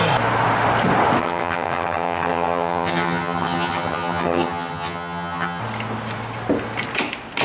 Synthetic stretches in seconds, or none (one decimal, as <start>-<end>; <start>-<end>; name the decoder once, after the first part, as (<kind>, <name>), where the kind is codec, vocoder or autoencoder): 1.2-5.6 (vocoder, HiFi-GAN)